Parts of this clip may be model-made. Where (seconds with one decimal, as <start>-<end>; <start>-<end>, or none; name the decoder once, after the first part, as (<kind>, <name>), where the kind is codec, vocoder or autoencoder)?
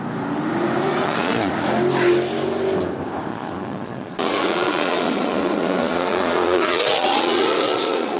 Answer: 1.0-1.5 (vocoder, Vocos); 3.3-8.2